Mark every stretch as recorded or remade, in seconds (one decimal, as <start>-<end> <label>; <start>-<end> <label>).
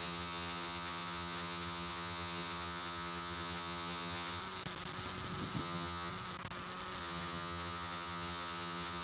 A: 0.0-4.4 remade; 4.4-5.6 recorded; 5.6-6.1 remade; 6.1-7.0 recorded; 7.0-9.0 remade